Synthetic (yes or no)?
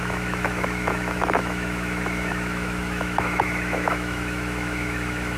yes